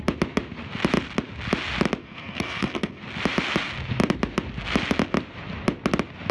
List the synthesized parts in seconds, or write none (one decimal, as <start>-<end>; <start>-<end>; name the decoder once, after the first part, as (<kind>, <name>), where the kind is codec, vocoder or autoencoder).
2.0-3.0 (codec, SNAC)